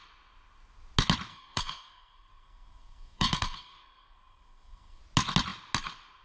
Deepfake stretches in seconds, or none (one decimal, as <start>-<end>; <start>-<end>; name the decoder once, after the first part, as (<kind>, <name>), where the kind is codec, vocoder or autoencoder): 1.3-5.0 (codec, SNAC)